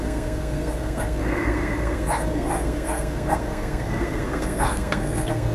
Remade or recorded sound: remade